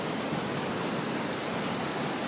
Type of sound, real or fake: real